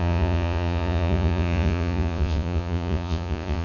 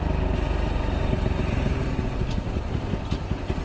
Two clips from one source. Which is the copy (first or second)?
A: first